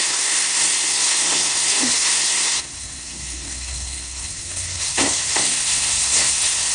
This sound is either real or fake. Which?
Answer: fake